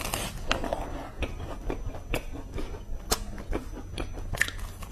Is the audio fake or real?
real